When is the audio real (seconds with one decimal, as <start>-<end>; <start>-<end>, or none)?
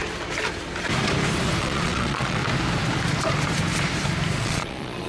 0.0-1.6; 2.4-4.4